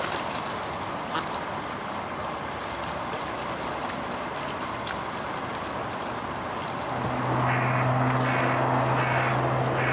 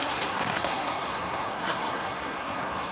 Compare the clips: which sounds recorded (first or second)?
first